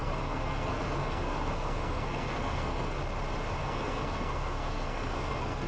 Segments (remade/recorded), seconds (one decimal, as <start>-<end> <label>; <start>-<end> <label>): 0.0-3.0 remade; 3.0-3.6 recorded; 3.6-5.7 remade